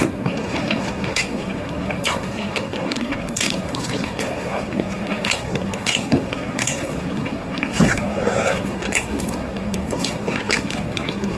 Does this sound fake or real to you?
fake